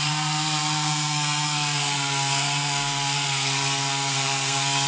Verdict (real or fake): fake